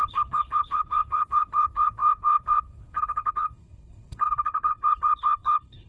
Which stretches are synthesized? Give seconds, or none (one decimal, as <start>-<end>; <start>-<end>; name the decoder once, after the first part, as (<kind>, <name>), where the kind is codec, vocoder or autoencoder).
0.0-5.9 (codec, HILCodec)